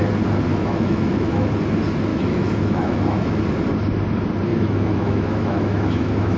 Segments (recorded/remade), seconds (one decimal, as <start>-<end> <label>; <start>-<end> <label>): 0.0-0.5 recorded; 0.5-1.5 remade; 1.5-2.1 recorded; 2.1-3.4 remade; 3.4-4.5 recorded; 4.5-6.4 remade